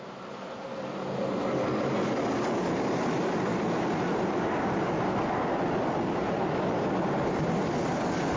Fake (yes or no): no